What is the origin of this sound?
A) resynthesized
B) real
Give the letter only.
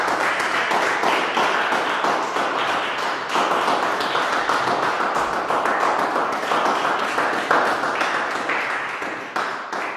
B